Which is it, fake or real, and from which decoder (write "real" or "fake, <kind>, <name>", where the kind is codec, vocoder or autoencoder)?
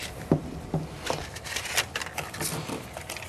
real